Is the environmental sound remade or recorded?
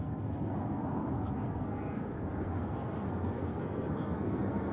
remade